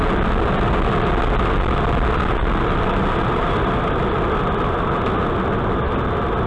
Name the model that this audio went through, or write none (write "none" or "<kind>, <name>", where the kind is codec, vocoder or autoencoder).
none